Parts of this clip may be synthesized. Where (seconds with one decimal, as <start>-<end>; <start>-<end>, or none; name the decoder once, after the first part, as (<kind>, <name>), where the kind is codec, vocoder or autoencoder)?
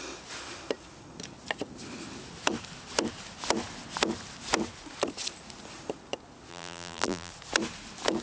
6.5-7.3 (vocoder, BigVGAN v2)